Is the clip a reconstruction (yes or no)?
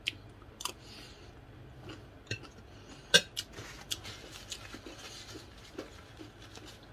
no